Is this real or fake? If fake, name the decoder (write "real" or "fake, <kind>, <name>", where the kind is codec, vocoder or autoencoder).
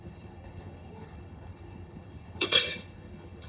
fake, codec, HILCodec